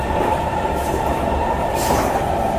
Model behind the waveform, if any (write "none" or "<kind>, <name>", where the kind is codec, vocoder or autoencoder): vocoder, BigVGAN v2